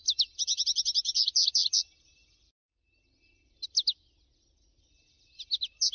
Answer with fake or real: real